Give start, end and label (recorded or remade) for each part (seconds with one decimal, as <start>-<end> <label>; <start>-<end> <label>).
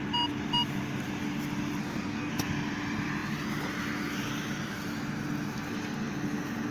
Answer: 0.0-1.8 recorded; 1.8-2.3 remade; 2.3-6.7 recorded